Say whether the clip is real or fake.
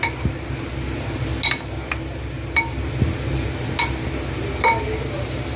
real